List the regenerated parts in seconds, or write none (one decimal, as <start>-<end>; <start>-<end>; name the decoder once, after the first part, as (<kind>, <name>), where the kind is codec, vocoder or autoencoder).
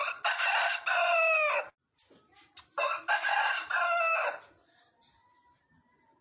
4.2-4.8 (vocoder, BigVGAN v2)